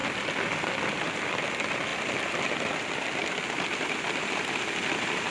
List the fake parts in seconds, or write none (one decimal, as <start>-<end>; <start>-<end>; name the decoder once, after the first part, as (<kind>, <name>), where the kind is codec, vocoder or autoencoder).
none